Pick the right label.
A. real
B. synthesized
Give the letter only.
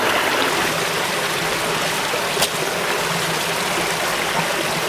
A